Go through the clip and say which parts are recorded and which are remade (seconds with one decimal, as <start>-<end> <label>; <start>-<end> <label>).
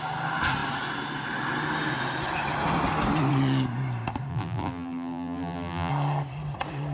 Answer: 0.0-4.3 recorded; 4.3-5.9 remade; 5.9-6.9 recorded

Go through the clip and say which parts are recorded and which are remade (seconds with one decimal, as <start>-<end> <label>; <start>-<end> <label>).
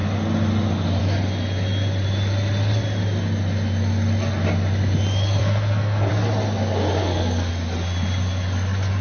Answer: 0.0-5.4 recorded; 5.4-6.1 remade; 6.1-7.0 recorded; 7.0-7.5 remade; 7.5-9.0 recorded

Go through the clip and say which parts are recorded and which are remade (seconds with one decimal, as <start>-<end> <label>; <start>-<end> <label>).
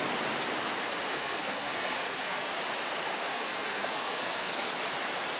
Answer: 0.0-1.1 recorded; 1.1-2.5 remade; 2.5-3.3 recorded; 3.3-4.7 remade; 4.7-5.4 recorded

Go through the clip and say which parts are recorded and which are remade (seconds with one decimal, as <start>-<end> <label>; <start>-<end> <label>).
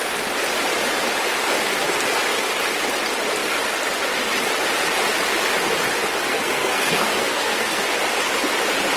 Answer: 0.0-6.3 recorded; 6.3-7.8 remade; 7.8-9.0 recorded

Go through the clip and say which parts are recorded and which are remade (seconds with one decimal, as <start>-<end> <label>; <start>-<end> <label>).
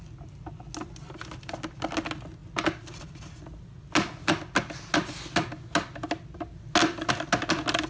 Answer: 0.0-7.9 recorded